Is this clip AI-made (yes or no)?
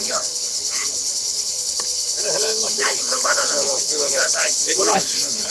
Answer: yes